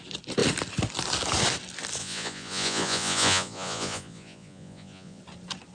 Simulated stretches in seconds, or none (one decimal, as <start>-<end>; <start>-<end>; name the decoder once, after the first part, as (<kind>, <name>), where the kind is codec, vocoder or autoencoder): 2.0-5.2 (vocoder, Vocos)